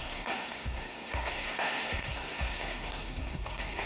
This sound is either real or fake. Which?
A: fake